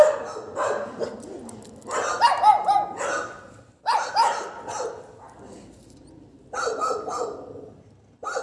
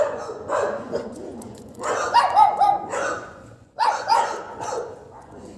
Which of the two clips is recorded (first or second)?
first